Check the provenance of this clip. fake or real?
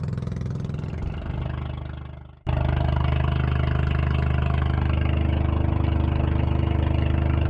real